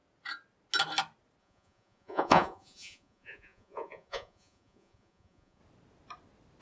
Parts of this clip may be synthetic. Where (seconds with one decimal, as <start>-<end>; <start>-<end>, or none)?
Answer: 1.4-5.6